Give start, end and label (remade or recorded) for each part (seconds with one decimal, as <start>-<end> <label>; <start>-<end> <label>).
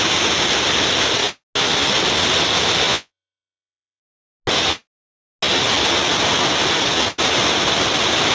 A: 0.0-2.9 recorded; 2.9-4.0 remade; 4.0-8.3 recorded